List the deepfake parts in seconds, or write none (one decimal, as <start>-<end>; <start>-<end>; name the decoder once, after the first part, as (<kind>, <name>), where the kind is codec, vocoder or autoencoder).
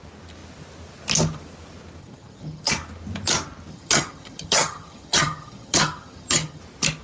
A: 2.0-2.7 (vocoder, HiFi-GAN); 3.7-6.6